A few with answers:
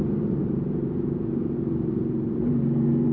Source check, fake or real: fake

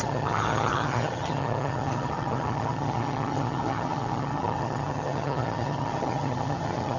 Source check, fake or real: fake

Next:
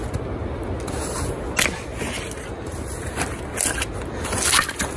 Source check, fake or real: real